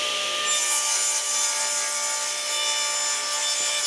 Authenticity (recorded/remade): recorded